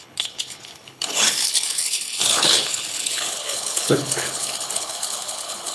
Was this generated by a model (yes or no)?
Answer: yes